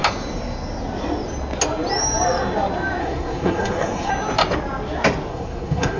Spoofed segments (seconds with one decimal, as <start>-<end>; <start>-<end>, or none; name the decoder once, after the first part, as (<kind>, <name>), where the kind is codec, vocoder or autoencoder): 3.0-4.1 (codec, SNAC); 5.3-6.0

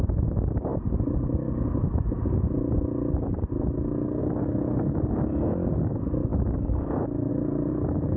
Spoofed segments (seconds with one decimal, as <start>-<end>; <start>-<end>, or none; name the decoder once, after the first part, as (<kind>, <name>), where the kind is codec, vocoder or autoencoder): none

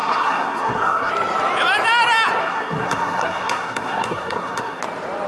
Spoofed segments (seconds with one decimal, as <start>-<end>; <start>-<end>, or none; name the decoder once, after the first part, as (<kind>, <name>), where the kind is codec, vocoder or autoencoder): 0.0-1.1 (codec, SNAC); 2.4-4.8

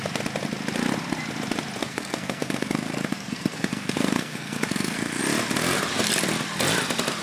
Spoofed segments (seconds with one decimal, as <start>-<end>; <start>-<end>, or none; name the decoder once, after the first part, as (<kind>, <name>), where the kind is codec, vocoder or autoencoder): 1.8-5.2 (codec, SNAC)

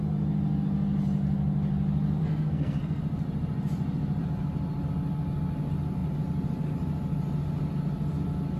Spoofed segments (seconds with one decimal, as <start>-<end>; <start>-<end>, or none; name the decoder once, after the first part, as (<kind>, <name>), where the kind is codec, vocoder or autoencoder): 2.2-3.0 (codec, SNAC)

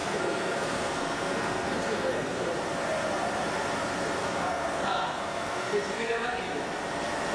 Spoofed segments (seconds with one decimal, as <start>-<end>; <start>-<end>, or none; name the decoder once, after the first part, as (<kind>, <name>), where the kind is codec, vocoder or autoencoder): 0.0-2.5 (codec, SNAC); 4.2-6.4

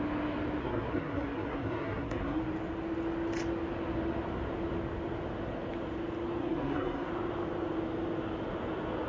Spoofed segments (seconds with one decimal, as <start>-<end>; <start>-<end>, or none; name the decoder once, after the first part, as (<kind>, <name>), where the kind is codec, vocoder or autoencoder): 0.6-2.4 (codec, SNAC); 6.4-7.1